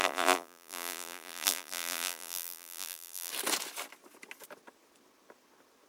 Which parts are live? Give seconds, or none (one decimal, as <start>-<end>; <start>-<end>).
3.3-5.9